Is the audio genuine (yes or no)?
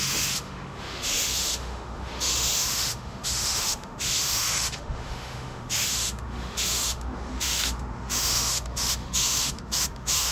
no